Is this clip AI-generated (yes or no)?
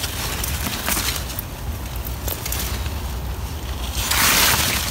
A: no